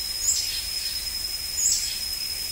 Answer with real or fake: real